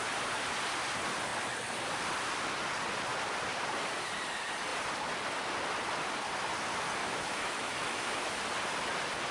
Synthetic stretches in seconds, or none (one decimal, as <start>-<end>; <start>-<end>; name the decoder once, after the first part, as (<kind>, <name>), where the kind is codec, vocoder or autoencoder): 7.0-8.4 (autoencoder, DAC-VAE)